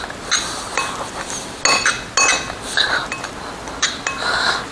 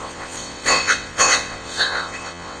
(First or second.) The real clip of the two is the first